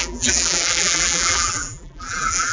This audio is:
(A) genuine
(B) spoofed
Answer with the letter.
B